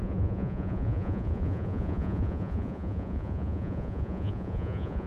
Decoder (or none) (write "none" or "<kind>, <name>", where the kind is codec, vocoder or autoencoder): vocoder, Vocos